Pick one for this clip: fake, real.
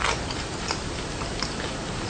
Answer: real